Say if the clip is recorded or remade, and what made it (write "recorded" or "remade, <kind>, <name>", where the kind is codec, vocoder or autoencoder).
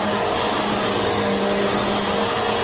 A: recorded